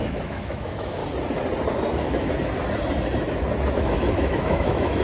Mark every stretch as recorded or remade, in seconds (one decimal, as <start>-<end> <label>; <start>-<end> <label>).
0.0-1.0 remade; 1.0-3.8 recorded; 3.8-5.0 remade